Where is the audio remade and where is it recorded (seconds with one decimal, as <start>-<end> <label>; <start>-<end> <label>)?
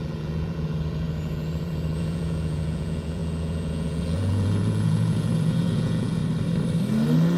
0.0-6.2 remade; 6.2-7.4 recorded